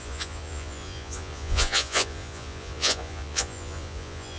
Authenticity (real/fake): fake